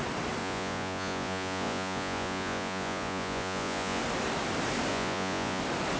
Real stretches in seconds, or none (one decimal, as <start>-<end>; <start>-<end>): 0.0-0.4; 4.0-4.9; 5.6-6.0